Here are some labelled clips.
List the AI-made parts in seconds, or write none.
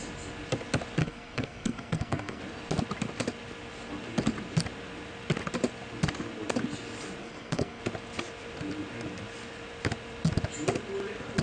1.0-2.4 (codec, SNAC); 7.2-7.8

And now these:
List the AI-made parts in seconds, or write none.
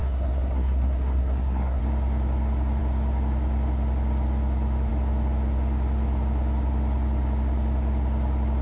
0.0-1.8 (codec, SNAC)